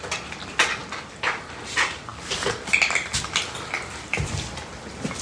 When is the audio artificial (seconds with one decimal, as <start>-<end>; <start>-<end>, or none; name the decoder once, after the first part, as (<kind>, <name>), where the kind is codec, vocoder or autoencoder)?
none